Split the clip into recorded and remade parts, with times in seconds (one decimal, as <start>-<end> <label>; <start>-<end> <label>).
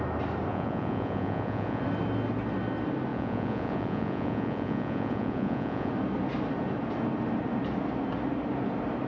0.0-0.5 recorded; 0.5-1.8 remade; 1.8-3.1 recorded; 3.1-5.9 remade; 5.9-9.1 recorded